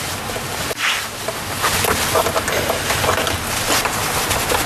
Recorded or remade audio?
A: recorded